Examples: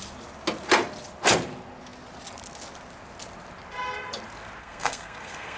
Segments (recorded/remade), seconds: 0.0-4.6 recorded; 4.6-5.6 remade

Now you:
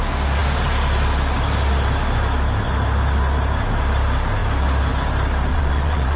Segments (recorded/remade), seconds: 0.0-5.5 recorded; 5.5-6.2 remade

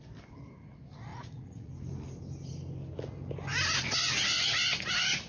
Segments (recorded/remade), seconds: 0.0-1.1 recorded; 1.1-1.7 remade; 1.7-5.3 recorded

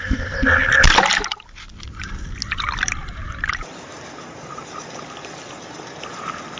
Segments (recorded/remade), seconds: 0.0-3.0 recorded; 3.0-4.6 remade; 4.6-6.6 recorded

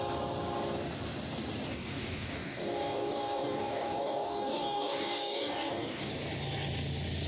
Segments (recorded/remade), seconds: 0.0-1.7 recorded; 1.7-6.1 remade; 6.1-7.3 recorded